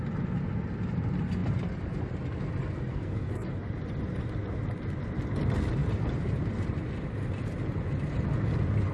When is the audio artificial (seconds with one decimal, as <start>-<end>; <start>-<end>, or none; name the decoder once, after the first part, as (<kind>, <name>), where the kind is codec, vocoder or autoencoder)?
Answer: 2.9-3.5 (codec, SNAC)